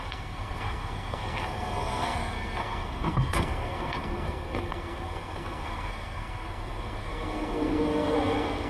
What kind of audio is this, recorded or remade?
remade